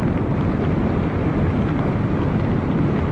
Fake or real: real